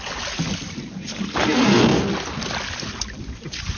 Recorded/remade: recorded